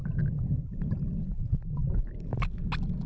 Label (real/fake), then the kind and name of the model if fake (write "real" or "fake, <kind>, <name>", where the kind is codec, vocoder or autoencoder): real